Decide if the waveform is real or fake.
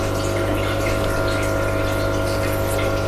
real